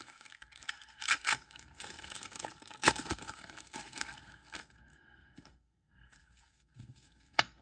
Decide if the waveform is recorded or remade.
remade